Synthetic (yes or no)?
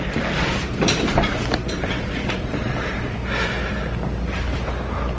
no